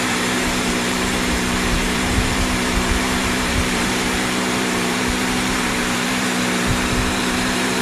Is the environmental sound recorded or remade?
remade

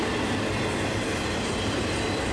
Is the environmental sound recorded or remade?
recorded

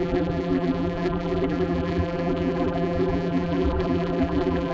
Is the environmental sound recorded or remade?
remade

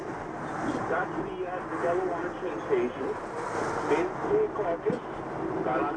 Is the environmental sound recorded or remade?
recorded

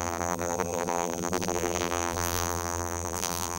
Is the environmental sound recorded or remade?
remade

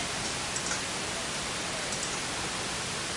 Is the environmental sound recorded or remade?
recorded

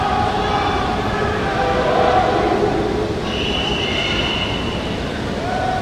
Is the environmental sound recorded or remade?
recorded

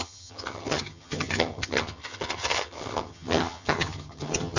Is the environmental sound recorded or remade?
remade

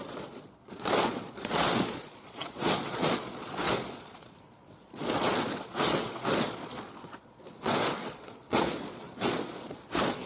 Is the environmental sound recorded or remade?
remade